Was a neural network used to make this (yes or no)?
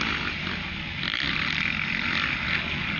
no